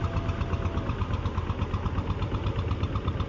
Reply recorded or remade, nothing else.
recorded